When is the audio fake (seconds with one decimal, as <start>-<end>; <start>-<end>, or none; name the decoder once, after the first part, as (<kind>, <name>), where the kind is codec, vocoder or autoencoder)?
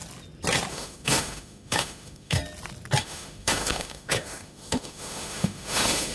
0.7-2.4 (autoencoder, DAC-VAE); 3.0-6.1